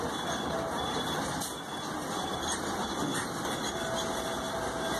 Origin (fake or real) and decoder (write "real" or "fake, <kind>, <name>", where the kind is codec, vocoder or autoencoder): real